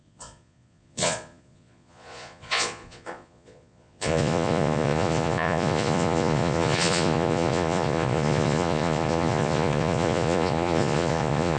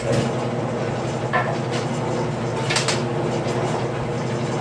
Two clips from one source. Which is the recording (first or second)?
second